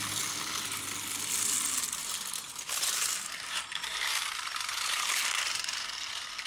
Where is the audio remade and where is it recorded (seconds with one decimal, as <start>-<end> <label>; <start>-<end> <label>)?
0.0-2.0 recorded; 2.0-5.9 remade; 5.9-6.5 recorded